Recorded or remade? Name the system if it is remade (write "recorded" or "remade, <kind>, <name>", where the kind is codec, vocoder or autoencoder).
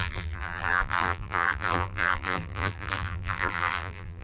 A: remade, vocoder, BigVGAN v2